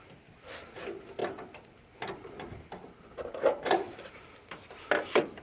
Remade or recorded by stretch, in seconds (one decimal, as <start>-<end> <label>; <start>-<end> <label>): 0.0-5.4 recorded